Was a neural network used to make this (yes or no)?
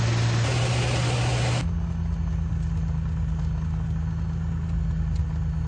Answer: no